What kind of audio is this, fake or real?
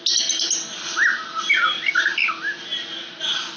real